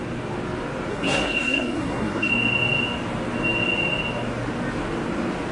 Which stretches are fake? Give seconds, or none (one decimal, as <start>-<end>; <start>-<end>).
0.9-2.3